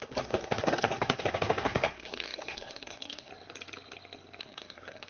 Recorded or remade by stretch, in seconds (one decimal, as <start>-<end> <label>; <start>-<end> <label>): 0.0-3.3 remade; 3.3-4.4 recorded; 4.4-5.1 remade